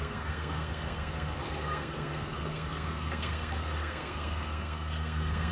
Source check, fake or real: fake